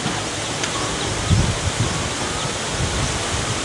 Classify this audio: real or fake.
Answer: real